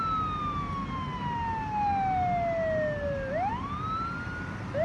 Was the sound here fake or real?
real